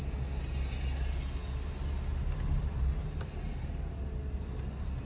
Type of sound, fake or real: real